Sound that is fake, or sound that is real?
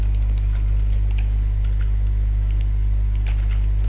real